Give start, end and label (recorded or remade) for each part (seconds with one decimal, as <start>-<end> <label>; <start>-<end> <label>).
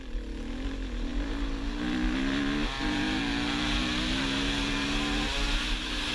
0.0-6.1 recorded